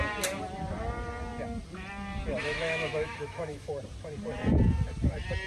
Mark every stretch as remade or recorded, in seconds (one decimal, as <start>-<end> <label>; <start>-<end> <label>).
0.0-2.4 recorded; 2.4-3.7 remade; 3.7-5.5 recorded